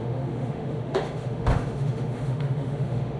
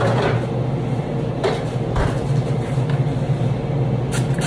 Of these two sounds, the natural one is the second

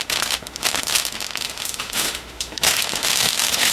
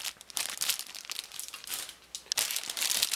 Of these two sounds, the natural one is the second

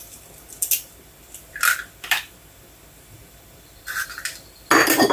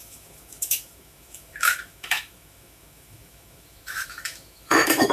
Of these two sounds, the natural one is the first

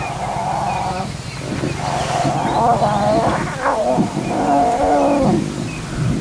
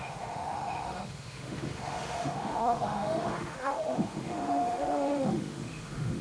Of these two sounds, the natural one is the first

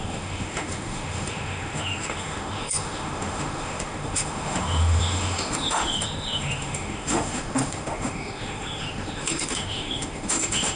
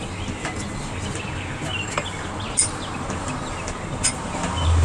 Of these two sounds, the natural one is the second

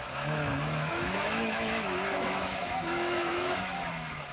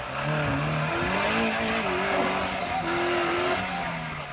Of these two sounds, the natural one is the second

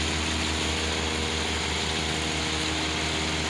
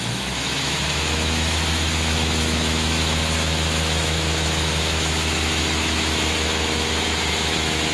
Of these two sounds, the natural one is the first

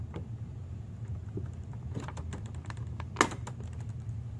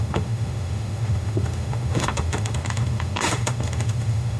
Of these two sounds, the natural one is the first